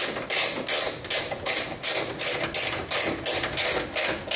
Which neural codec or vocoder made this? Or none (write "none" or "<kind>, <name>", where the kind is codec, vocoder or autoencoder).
none